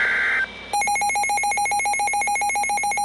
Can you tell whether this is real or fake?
real